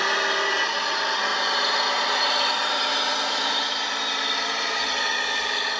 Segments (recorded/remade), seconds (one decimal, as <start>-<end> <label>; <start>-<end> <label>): 0.0-1.3 recorded; 1.3-4.8 remade; 4.8-5.8 recorded

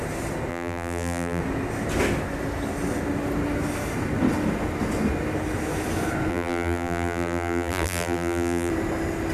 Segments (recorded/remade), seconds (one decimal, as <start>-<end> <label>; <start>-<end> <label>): 0.0-0.5 recorded; 0.5-1.4 remade; 1.4-6.3 recorded; 6.3-8.7 remade; 8.7-9.3 recorded